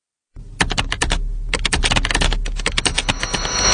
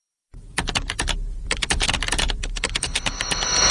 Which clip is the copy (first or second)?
second